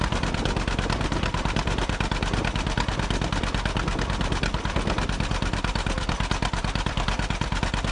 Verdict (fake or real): real